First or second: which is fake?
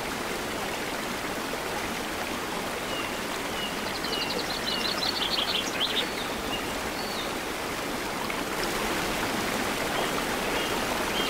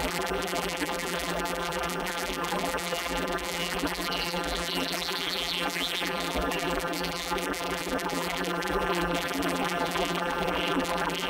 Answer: second